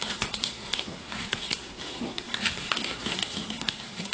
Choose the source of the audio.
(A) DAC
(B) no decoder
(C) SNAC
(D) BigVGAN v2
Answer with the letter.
C